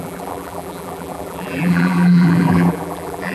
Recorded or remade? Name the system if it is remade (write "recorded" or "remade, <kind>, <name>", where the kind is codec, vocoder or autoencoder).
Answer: remade, vocoder, BigVGAN v2